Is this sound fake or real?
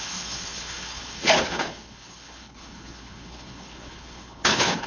fake